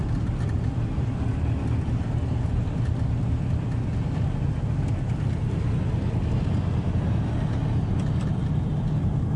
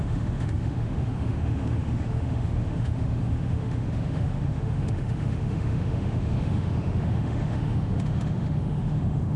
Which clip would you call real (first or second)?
first